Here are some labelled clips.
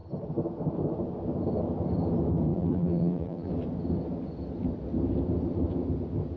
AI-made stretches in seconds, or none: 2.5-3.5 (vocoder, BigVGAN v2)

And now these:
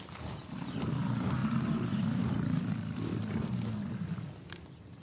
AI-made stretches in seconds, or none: none